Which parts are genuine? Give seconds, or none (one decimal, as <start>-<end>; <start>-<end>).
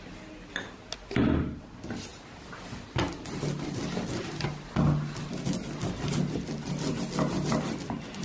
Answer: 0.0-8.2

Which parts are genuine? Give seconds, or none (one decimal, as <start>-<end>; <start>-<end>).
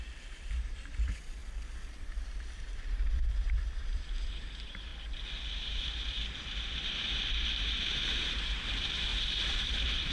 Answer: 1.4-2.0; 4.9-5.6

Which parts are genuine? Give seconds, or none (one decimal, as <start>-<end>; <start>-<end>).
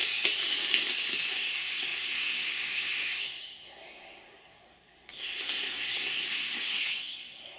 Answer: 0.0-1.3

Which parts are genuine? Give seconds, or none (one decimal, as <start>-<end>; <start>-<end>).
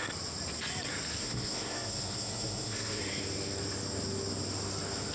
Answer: 0.0-1.2; 3.0-5.1